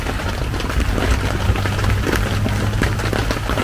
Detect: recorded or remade recorded